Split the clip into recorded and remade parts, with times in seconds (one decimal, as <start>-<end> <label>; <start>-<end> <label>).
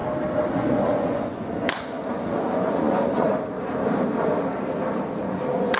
0.0-0.5 recorded; 0.5-3.3 remade; 3.3-5.2 recorded; 5.2-5.8 remade